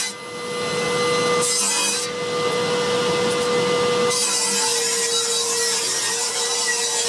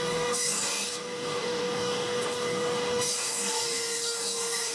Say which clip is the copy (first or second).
second